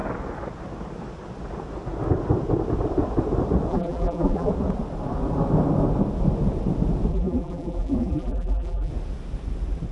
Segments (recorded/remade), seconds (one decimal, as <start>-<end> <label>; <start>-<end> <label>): 0.0-3.7 recorded; 3.7-4.5 remade; 4.5-7.1 recorded; 7.1-8.9 remade; 8.9-9.9 recorded